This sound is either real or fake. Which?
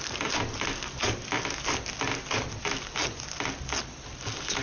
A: real